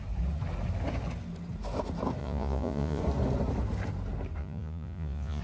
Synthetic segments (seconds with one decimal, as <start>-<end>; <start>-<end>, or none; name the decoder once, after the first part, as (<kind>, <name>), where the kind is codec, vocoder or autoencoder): 2.2-3.0 (vocoder, Vocos); 4.4-5.4